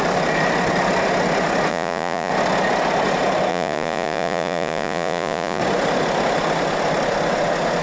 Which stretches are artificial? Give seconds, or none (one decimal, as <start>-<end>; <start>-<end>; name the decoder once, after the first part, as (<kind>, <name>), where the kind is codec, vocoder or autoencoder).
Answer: 1.7-2.3 (vocoder, Vocos); 3.5-5.6